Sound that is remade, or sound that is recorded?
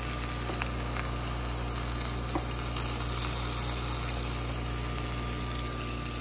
recorded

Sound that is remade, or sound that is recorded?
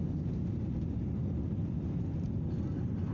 recorded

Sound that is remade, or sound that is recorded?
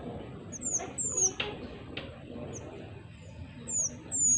recorded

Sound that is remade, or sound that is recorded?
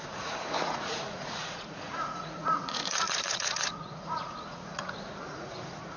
remade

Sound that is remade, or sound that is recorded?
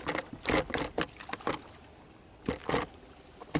recorded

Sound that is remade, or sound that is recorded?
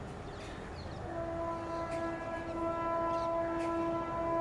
recorded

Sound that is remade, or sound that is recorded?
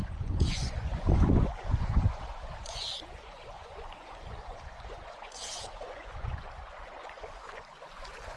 remade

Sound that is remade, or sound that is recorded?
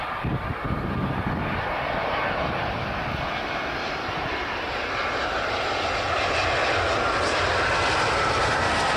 recorded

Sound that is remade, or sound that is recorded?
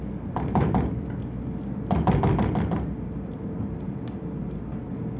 recorded